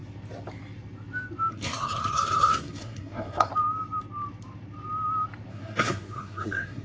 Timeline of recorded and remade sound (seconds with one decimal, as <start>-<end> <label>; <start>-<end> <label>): 0.0-1.5 recorded; 1.5-3.5 remade; 3.5-5.5 recorded; 5.5-6.8 remade

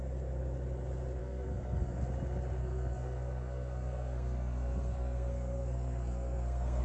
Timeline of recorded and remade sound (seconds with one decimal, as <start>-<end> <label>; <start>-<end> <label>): 0.0-1.2 recorded; 1.2-2.0 remade; 2.0-2.6 recorded; 2.6-6.8 remade

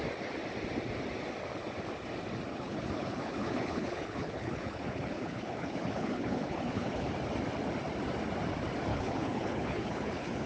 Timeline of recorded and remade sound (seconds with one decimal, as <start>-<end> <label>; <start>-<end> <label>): 0.0-2.5 recorded; 2.5-7.1 remade; 7.1-8.9 recorded; 8.9-10.5 remade

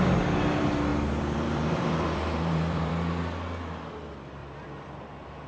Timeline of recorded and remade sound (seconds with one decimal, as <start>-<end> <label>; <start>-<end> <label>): 0.0-0.9 recorded; 0.9-2.9 remade; 2.9-4.4 recorded; 4.4-5.5 remade